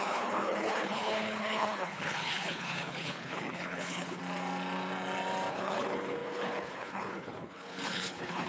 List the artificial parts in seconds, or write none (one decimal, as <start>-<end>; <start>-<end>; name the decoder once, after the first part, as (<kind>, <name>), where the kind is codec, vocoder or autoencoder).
0.0-4.2 (codec, HILCodec); 5.5-8.5